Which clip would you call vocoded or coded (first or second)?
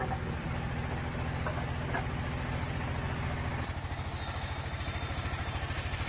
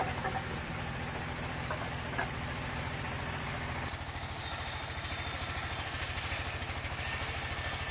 second